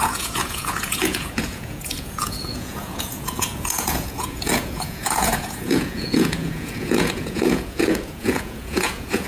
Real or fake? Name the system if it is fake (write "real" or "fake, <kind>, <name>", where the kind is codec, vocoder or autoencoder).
fake, vocoder, Vocos